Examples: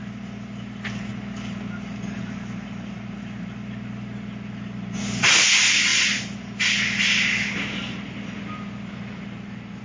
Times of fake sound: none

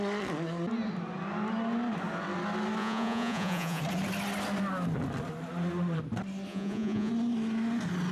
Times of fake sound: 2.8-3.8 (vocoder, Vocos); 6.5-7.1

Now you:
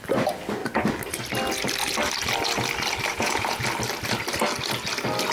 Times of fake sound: 3.1-3.6 (vocoder, Vocos)

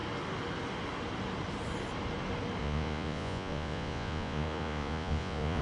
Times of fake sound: 2.6-5.6 (vocoder, Vocos)